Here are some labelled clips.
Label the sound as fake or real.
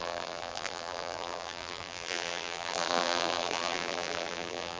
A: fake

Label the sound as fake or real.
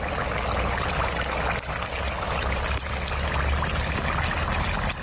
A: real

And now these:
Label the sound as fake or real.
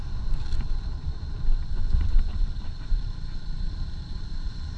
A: fake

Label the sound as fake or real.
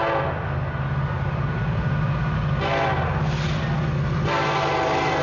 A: real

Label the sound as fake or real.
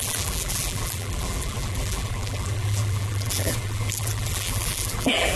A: fake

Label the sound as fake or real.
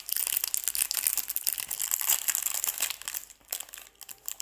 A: real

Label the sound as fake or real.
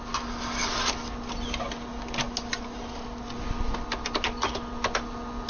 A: real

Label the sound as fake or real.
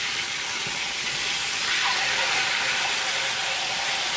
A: real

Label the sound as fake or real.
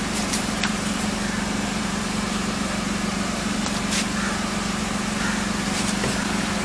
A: fake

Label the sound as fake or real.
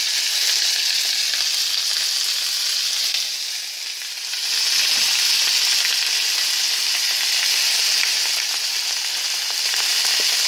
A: real